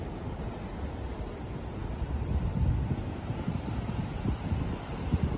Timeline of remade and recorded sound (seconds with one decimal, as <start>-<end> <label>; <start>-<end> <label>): 0.0-5.4 recorded